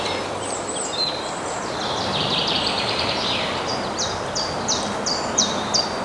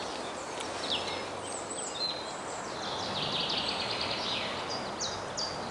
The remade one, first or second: first